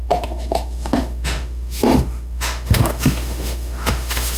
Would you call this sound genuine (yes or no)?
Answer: no